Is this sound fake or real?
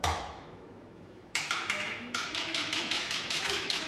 fake